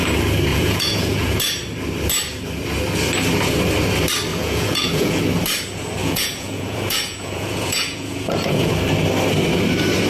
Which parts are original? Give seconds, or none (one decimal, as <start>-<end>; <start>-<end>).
0.0-0.5; 1.4-4.3; 5.2-6.0; 8.7-10.1